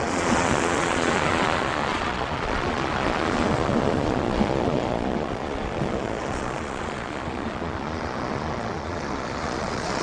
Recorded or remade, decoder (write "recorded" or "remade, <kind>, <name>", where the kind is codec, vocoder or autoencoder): remade, vocoder, Vocos